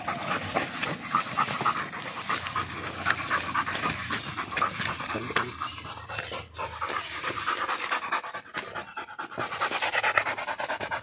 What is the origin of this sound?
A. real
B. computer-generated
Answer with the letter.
A